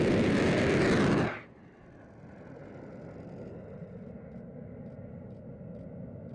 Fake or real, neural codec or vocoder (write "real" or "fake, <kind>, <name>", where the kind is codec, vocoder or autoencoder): real